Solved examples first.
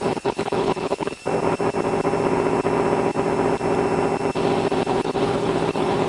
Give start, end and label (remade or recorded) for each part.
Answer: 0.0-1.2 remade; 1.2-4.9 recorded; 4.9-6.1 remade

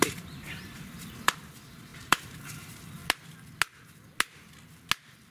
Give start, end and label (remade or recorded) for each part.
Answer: 0.0-3.0 remade; 3.0-5.3 recorded